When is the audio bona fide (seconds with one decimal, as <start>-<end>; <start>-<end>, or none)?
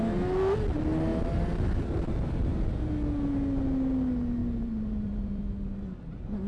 0.0-1.1; 2.9-4.4; 5.4-6.5